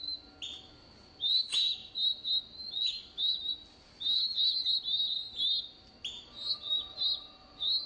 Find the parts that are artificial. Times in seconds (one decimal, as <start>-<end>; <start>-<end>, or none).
none